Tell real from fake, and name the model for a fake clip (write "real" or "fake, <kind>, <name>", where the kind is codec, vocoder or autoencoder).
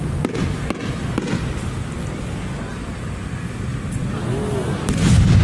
real